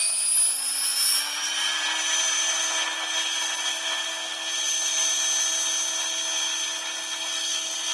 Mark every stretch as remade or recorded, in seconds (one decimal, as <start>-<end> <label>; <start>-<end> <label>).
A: 0.0-7.9 recorded